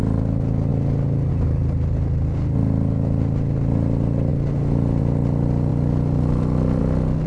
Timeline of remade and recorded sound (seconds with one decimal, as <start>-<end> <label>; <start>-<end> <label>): 0.0-7.3 recorded